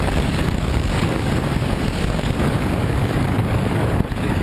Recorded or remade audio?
remade